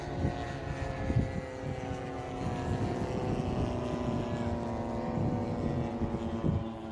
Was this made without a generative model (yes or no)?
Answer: yes